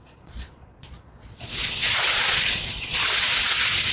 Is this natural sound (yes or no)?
no